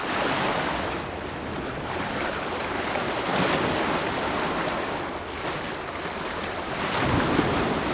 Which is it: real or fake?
real